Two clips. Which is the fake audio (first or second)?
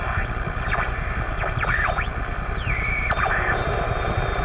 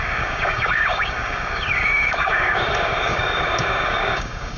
second